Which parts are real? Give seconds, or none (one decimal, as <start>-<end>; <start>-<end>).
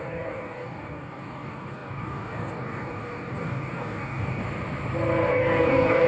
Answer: 4.4-5.3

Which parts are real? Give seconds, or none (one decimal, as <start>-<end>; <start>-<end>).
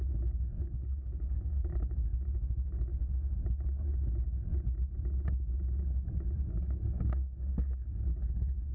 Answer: 2.1-6.5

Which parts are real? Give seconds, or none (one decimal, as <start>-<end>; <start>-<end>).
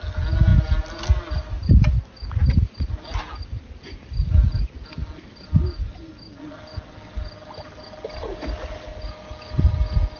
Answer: 0.0-10.2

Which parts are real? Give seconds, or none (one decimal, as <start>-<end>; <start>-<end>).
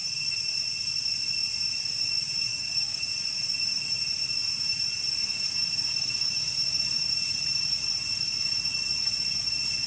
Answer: 0.0-2.5; 3.1-9.9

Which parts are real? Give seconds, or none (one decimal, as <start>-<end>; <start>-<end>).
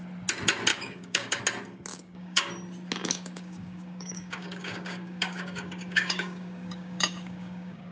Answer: 0.0-0.7; 1.4-1.9; 2.5-3.0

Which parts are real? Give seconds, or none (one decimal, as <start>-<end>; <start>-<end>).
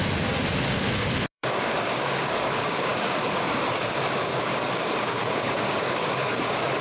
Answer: 0.0-1.3